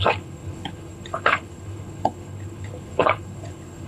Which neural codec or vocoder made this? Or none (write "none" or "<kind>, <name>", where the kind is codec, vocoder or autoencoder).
codec, HILCodec